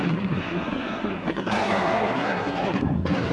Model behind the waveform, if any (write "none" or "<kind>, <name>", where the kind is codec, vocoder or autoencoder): codec, SNAC